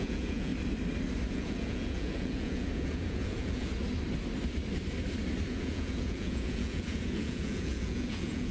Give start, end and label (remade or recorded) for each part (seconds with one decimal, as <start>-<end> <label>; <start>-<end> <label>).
0.0-0.5 remade; 0.5-1.3 recorded; 1.3-3.7 remade; 3.7-5.5 recorded; 5.5-8.5 remade